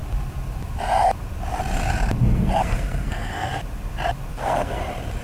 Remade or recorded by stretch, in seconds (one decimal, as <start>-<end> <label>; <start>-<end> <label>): 0.0-2.2 recorded; 2.2-3.5 remade; 3.5-4.3 recorded; 4.3-4.8 remade; 4.8-5.2 recorded